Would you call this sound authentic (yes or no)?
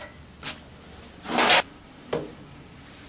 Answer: yes